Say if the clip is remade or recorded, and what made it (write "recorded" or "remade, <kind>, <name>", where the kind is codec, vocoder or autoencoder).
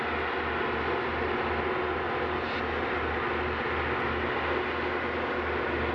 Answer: recorded